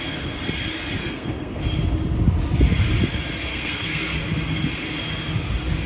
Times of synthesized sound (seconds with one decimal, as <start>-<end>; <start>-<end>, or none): 1.0-1.6; 3.5-4.2